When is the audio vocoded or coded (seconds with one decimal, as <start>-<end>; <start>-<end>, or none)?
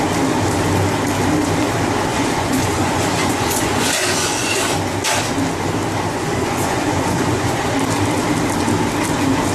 2.1-4.6; 6.1-7.6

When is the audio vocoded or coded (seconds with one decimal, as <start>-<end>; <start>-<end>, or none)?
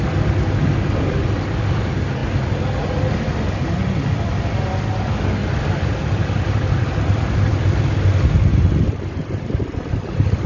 5.4-7.8; 8.5-9.9